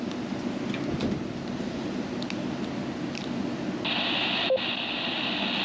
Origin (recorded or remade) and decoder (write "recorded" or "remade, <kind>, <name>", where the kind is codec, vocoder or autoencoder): recorded